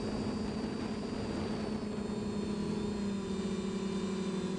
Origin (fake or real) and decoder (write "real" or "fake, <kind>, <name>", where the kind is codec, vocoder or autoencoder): real